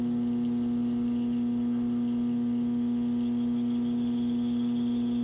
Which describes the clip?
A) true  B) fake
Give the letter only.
A